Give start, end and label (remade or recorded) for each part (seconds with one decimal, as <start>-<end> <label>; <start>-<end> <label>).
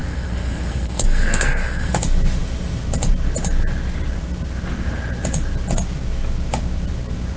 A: 0.0-2.0 remade; 2.0-7.4 recorded